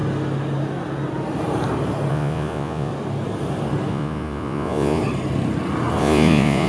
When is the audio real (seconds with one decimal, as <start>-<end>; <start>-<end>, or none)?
0.0-2.1; 2.9-3.9; 5.0-6.0